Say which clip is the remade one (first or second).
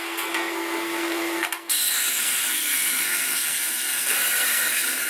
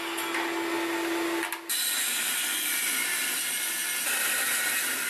first